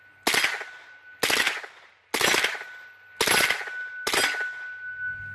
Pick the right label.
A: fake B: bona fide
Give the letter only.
B